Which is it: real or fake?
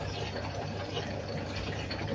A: fake